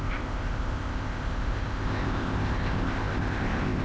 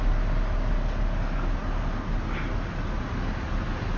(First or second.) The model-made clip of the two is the first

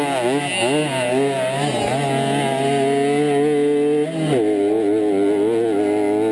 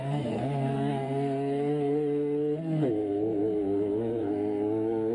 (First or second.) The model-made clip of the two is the second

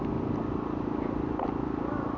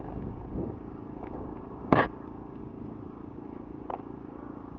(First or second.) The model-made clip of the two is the second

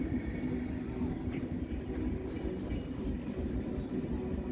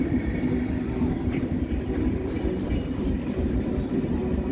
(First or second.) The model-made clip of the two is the second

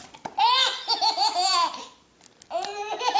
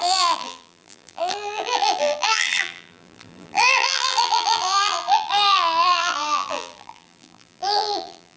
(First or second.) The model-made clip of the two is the second